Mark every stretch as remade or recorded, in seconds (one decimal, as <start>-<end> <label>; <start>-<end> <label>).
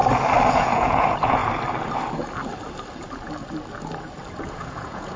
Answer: 0.0-0.5 recorded; 0.5-1.4 remade; 1.4-4.5 recorded; 4.5-5.2 remade